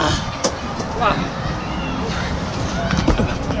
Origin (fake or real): real